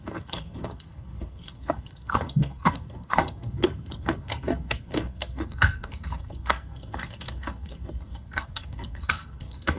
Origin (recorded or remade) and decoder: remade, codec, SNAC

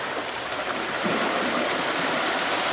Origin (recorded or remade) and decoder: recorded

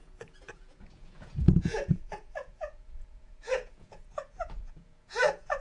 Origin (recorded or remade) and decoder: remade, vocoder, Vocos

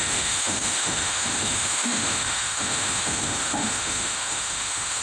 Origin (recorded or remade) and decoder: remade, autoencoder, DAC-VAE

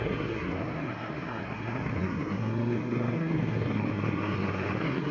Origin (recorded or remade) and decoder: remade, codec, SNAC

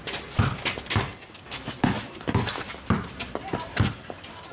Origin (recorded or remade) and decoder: recorded